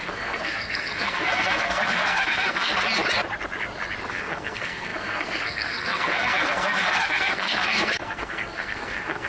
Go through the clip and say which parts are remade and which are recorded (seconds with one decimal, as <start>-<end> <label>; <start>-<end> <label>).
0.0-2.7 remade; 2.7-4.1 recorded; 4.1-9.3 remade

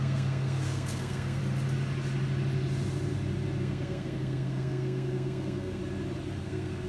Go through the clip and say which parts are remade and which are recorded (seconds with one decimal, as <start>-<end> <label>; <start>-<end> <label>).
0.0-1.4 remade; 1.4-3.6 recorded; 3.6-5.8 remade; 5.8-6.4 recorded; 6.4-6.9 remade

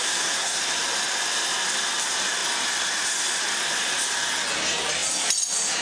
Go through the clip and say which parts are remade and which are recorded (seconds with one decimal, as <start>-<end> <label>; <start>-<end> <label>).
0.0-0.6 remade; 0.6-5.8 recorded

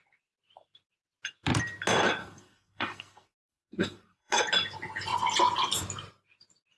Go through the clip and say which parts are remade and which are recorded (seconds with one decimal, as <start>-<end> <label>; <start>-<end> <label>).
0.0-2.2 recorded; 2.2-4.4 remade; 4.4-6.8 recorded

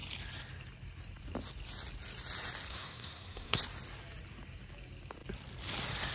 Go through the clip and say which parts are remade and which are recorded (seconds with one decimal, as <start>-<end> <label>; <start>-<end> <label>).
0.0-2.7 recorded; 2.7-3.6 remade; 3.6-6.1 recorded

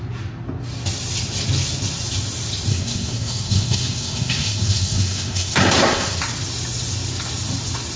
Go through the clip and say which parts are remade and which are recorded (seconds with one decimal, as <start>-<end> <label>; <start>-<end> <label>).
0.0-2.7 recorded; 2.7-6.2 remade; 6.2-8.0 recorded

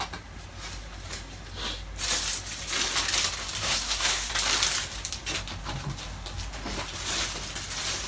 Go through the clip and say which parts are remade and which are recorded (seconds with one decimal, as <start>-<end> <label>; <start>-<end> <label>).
0.0-3.6 recorded; 3.6-4.3 remade; 4.3-8.1 recorded

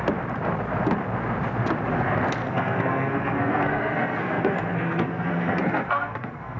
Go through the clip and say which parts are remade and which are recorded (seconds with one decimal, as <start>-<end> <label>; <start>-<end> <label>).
0.0-2.4 recorded; 2.4-6.6 remade